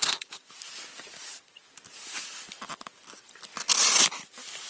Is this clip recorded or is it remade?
recorded